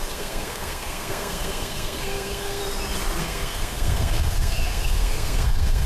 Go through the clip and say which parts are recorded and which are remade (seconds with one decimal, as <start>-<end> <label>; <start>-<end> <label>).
0.0-2.6 remade; 2.6-3.2 recorded; 3.2-5.9 remade